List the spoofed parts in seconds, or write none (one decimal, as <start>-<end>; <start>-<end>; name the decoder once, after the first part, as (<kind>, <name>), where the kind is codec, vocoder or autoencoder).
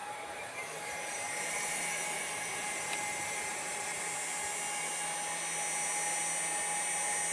0.0-4.0 (vocoder, BigVGAN v2)